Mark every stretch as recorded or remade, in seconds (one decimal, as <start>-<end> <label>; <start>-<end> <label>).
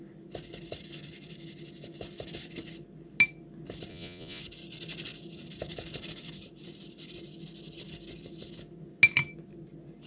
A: 0.0-3.9 recorded; 3.9-4.4 remade; 4.4-10.1 recorded